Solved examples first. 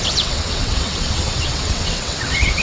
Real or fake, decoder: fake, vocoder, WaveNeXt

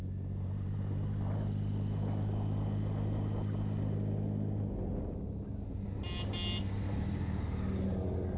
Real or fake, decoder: real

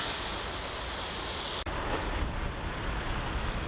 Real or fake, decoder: real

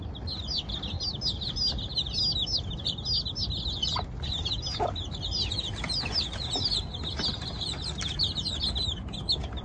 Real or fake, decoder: real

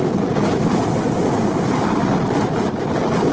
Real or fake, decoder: real